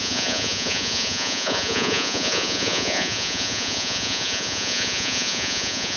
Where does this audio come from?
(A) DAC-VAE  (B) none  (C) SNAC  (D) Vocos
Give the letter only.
D